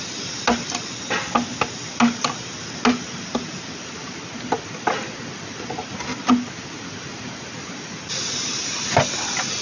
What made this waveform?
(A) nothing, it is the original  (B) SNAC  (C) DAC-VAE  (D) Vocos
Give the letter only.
A